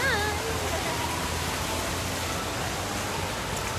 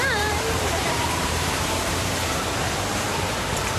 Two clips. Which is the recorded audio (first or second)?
first